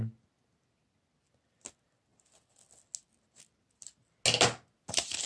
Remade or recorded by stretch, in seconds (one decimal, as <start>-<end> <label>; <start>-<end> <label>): 0.0-5.3 recorded